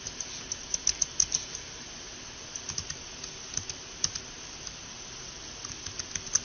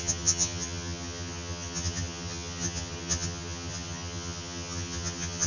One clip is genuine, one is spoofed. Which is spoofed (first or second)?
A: second